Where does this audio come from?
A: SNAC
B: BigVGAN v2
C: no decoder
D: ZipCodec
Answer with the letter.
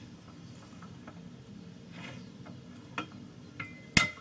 C